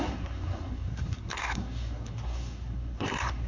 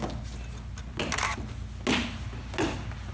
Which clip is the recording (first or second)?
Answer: second